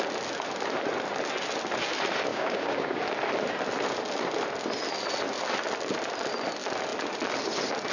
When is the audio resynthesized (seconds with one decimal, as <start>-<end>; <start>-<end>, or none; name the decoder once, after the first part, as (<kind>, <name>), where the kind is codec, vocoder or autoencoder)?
2.3-3.0 (codec, DAC)